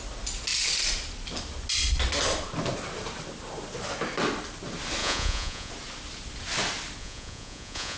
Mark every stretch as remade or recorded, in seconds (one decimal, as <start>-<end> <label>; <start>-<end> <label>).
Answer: 0.0-5.0 recorded; 5.0-5.7 remade; 5.7-7.0 recorded; 7.0-8.0 remade